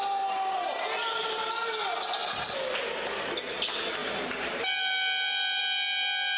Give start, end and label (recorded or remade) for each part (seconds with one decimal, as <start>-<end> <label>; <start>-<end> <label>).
0.0-6.4 recorded